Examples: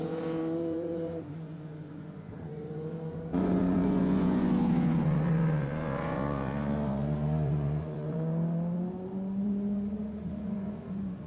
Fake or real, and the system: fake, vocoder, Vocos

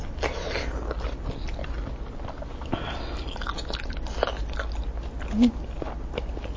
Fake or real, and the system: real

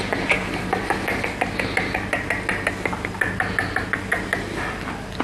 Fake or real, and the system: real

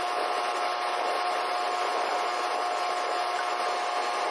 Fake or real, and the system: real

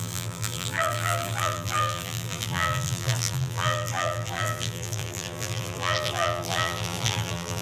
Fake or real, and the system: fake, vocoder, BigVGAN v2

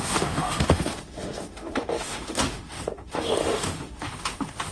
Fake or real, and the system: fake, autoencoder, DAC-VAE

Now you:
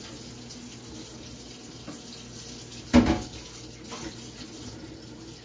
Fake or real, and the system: real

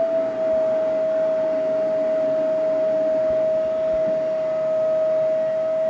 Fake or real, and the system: real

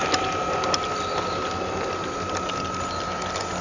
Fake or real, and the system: real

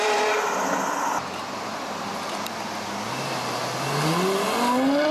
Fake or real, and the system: real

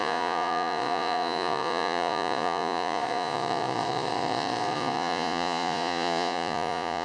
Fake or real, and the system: fake, vocoder, Vocos